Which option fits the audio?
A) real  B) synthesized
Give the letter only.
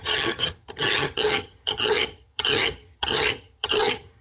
B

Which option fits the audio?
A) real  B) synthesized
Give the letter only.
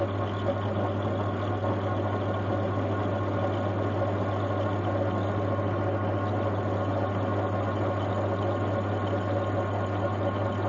A